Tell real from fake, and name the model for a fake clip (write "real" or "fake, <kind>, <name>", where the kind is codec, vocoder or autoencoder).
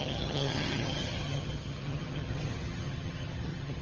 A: fake, vocoder, HiFi-GAN